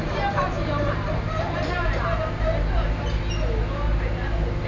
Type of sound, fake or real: real